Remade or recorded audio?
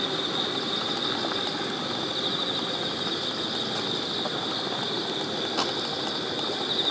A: recorded